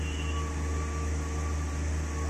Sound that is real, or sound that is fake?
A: real